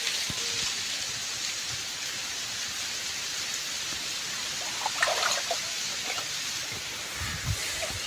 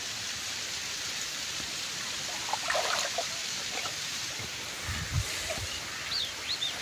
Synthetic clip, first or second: second